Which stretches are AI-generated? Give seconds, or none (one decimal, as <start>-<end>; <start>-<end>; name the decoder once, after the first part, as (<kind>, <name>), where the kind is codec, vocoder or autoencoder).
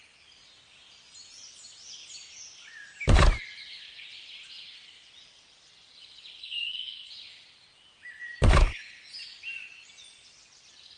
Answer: 6.4-7.1 (codec, SNAC)